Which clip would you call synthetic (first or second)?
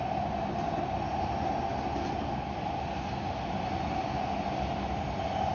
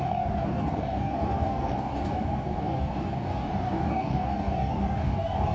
second